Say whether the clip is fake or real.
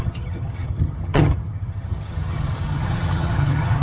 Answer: fake